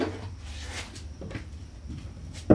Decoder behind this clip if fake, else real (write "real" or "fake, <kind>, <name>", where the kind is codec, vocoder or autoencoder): fake, vocoder, BigVGAN v2